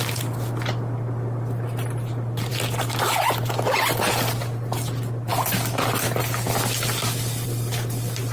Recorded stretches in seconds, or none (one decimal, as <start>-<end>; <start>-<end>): 0.0-8.3